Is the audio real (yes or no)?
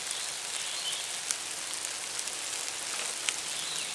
yes